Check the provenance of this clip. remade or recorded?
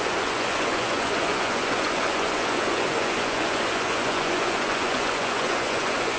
remade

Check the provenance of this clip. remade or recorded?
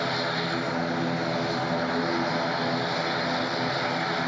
recorded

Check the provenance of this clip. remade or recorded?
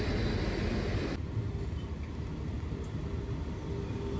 recorded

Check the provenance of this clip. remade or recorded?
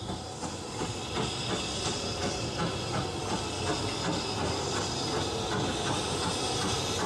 recorded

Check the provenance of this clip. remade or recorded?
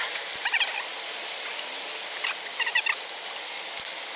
recorded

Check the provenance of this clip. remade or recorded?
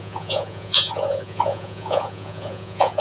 remade